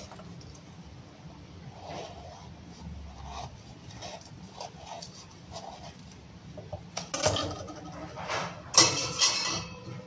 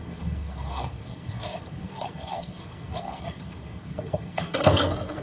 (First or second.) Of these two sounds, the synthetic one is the second